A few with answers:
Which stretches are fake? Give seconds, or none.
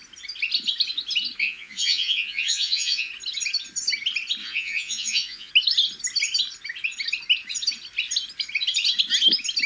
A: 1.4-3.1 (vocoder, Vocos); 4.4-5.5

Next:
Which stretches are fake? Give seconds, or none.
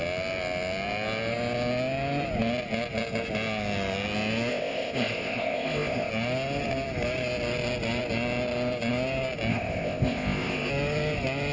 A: 4.5-6.1 (codec, ZipCodec); 9.5-10.7